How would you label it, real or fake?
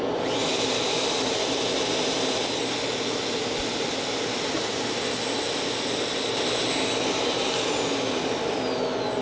real